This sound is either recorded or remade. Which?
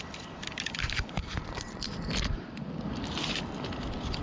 remade